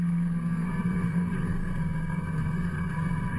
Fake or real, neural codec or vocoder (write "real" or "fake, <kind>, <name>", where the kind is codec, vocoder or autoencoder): fake, codec, SNAC